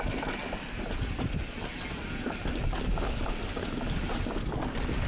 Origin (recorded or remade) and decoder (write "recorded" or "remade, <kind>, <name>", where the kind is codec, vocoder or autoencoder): recorded